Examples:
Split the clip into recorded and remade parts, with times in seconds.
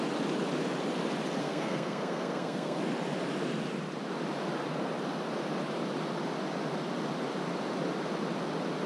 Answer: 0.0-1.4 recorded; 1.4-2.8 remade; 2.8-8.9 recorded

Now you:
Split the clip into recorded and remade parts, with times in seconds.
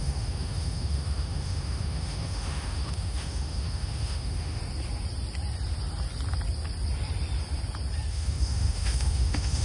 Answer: 0.0-4.6 remade; 4.6-8.1 recorded; 8.1-9.6 remade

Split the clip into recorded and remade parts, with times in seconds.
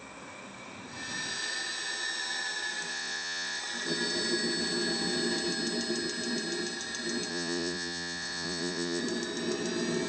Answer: 0.0-2.9 recorded; 2.9-3.6 remade; 3.6-7.3 recorded; 7.3-9.0 remade; 9.0-10.1 recorded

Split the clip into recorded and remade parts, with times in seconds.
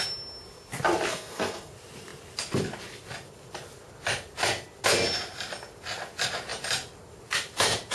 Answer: 0.0-1.1 recorded; 1.1-1.7 remade; 1.7-7.9 recorded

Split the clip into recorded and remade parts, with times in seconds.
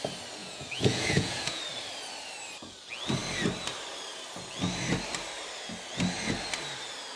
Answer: 0.0-0.4 recorded; 0.4-1.6 remade; 1.6-7.2 recorded